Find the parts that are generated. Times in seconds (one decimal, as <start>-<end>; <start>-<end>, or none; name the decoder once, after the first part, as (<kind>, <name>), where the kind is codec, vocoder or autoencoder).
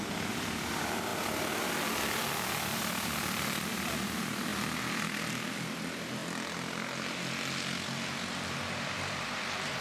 0.0-1.1 (vocoder, BigVGAN v2); 1.6-4.5; 5.3-6.2; 8.9-9.8